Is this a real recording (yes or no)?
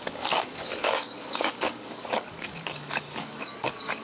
no